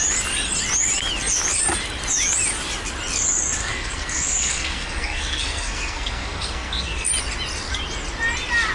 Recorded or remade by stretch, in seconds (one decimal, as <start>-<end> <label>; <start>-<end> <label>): 0.0-3.6 recorded; 3.6-7.1 remade; 7.1-8.7 recorded

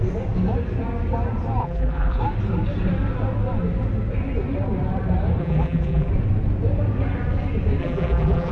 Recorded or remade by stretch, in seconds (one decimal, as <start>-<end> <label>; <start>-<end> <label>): 0.0-1.6 recorded; 1.6-2.2 remade; 2.2-5.4 recorded; 5.4-6.1 remade; 6.1-7.8 recorded; 7.8-8.5 remade

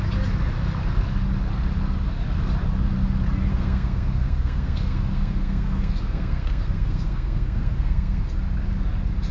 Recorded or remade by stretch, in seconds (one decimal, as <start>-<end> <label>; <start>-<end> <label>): 0.0-3.5 recorded; 3.5-8.2 remade; 8.2-9.3 recorded